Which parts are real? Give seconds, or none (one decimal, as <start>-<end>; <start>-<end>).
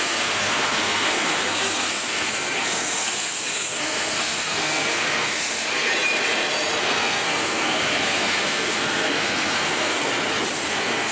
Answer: 5.9-6.8; 10.1-10.7